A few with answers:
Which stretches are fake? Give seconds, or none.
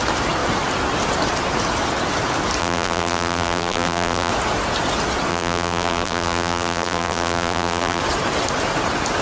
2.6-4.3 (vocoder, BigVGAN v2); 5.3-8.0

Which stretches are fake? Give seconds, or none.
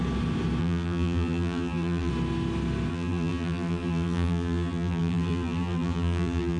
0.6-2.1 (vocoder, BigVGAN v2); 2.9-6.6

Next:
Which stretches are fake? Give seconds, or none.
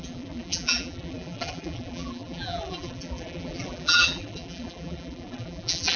0.0-6.0 (vocoder, BigVGAN v2)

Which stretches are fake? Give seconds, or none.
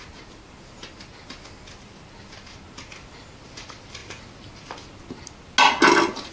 none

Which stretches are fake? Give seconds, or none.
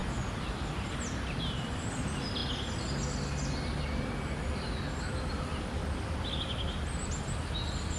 1.3-2.4 (vocoder, BigVGAN v2); 5.3-5.8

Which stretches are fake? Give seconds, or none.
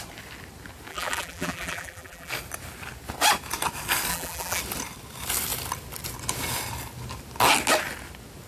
0.9-2.3 (vocoder, BigVGAN v2); 4.1-4.6